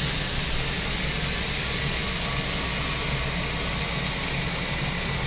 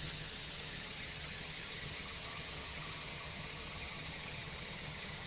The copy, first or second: second